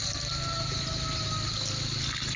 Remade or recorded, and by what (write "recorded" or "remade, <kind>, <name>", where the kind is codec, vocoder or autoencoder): recorded